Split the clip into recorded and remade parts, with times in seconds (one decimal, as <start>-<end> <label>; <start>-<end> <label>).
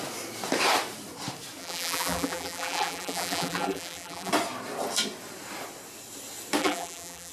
0.0-1.6 recorded; 1.6-4.3 remade; 4.3-6.6 recorded; 6.6-7.3 remade